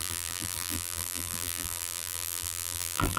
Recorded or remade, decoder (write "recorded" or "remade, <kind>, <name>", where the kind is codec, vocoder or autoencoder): remade, vocoder, BigVGAN v2